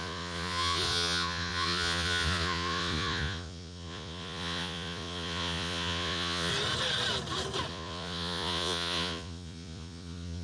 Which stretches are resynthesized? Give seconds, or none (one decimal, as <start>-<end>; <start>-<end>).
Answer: 0.0-6.5; 7.7-10.4